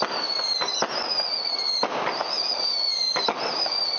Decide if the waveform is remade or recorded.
recorded